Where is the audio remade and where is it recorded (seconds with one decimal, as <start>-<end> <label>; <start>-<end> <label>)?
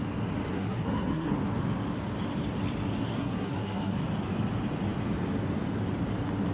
0.0-0.5 recorded; 0.5-1.3 remade; 1.3-3.0 recorded; 3.0-4.0 remade; 4.0-6.5 recorded